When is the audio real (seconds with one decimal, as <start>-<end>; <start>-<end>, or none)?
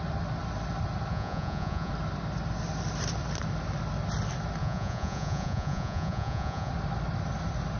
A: 0.0-1.1; 1.9-4.6; 6.7-7.8